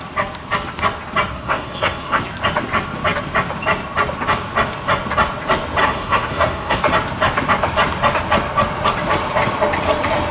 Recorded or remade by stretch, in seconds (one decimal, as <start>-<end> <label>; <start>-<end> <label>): 0.0-1.3 recorded; 1.3-2.2 remade; 2.2-5.8 recorded; 5.8-6.8 remade; 6.8-10.3 recorded